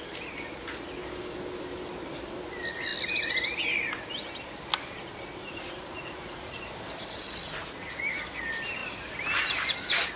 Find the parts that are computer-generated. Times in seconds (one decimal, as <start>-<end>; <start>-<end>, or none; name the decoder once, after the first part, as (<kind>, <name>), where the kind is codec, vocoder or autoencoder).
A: 5.4-6.6 (vocoder, Vocos); 7.4-8.0